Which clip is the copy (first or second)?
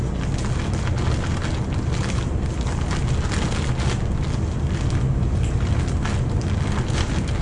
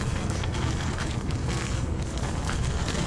second